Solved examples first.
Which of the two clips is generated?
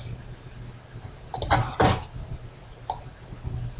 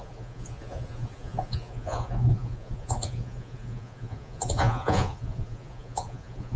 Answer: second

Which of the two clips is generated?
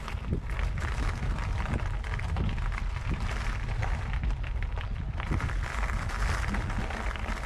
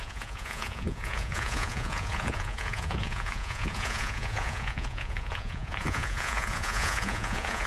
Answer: second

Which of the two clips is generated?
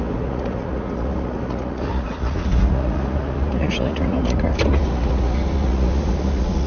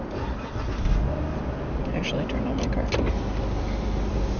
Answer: first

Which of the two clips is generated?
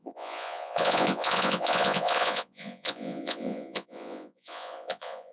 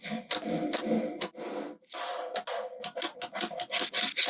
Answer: first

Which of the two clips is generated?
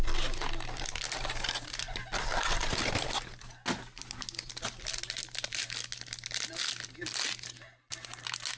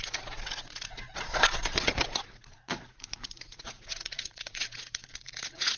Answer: second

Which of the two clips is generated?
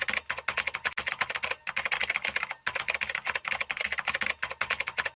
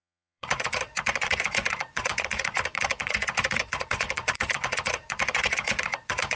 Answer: second